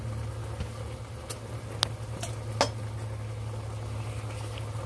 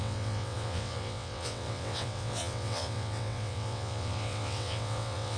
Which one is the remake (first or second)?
second